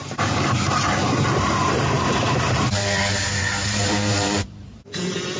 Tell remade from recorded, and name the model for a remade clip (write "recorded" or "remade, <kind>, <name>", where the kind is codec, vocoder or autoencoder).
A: remade, vocoder, BigVGAN v2